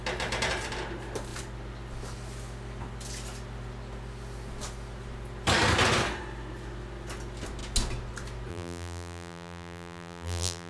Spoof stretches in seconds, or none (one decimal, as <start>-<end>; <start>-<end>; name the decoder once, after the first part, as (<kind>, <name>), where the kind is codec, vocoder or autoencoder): 8.5-10.7 (vocoder, BigVGAN v2)

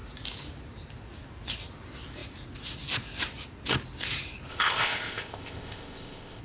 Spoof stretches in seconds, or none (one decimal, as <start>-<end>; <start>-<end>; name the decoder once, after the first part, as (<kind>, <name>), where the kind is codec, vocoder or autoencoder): 4.5-6.4 (codec, ZipCodec)

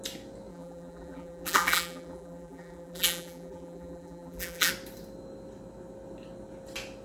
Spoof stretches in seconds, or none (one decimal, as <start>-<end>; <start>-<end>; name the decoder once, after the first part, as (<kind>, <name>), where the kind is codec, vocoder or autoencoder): 0.5-4.7 (vocoder, BigVGAN v2)

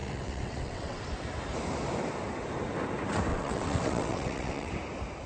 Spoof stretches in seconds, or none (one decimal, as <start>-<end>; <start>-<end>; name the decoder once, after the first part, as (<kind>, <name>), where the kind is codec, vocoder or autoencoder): 0.0-1.0 (vocoder, WaveNeXt); 3.3-4.7

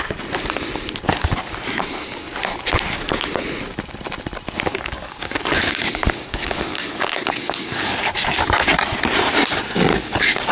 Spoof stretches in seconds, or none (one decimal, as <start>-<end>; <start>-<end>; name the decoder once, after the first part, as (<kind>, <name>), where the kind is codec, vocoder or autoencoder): 4.7-8.1 (codec, DAC); 9.9-10.5